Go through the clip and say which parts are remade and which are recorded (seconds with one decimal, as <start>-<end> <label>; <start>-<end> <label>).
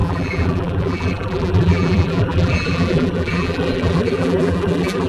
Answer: 0.0-5.1 remade